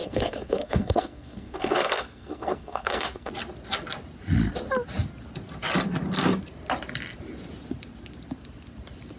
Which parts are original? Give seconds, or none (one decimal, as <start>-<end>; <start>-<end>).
3.3-9.2